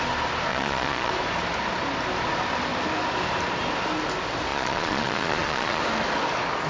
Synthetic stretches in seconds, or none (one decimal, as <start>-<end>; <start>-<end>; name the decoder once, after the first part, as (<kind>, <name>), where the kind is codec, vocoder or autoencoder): 0.5-1.1 (vocoder, Vocos); 4.5-5.8